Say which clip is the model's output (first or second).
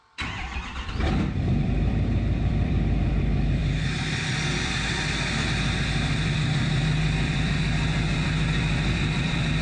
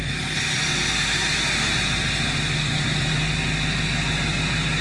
first